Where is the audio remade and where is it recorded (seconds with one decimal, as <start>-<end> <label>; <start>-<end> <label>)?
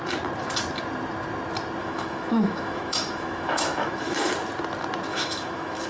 0.0-1.8 recorded; 1.8-4.3 remade; 4.3-5.1 recorded; 5.1-5.9 remade